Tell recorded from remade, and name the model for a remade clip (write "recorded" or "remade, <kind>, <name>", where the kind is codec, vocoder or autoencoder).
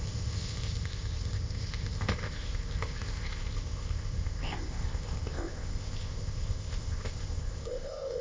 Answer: remade, codec, ZipCodec